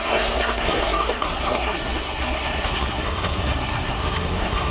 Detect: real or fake fake